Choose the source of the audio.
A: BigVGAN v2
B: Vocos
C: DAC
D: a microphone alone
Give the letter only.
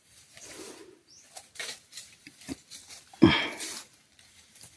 A